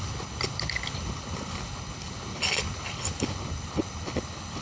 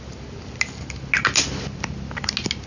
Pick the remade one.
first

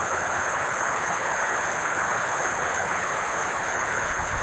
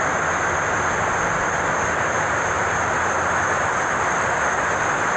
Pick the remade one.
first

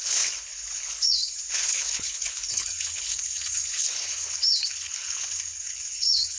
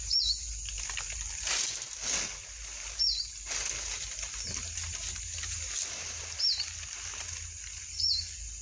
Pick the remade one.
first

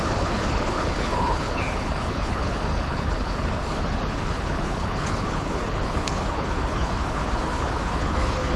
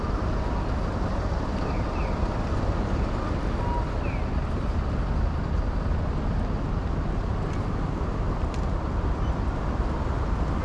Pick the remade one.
first